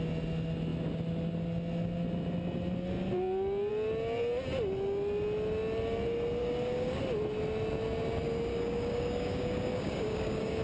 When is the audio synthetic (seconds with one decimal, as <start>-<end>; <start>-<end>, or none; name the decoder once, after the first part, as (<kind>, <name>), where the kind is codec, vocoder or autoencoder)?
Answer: 6.4-7.0 (codec, DAC); 8.5-10.6